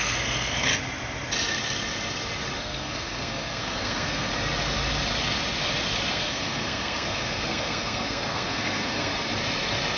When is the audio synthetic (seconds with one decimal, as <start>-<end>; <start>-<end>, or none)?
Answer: 0.0-0.7; 2.6-4.3; 6.1-9.1

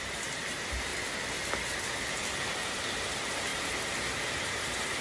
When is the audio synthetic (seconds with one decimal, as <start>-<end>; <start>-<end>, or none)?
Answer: 0.0-0.9; 2.3-3.5; 4.3-5.0

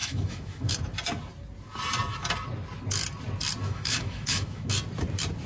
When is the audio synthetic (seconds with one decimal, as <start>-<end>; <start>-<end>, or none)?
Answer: 0.0-0.7; 3.6-4.7